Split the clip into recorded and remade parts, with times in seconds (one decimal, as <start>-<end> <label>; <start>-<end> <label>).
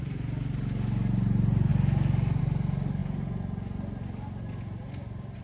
0.0-5.4 recorded